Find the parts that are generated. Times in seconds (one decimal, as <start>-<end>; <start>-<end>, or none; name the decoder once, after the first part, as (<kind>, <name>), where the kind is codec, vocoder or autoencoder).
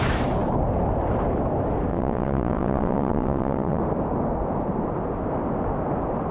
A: 1.9-3.8 (vocoder, WaveNeXt)